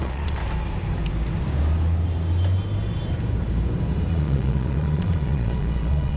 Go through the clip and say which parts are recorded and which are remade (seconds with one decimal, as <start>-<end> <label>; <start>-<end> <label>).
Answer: 0.0-0.4 remade; 0.4-4.1 recorded; 4.1-6.2 remade